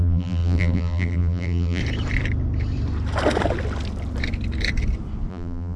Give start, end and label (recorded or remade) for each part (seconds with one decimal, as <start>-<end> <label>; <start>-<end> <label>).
0.0-1.8 remade; 1.8-5.3 recorded; 5.3-5.8 remade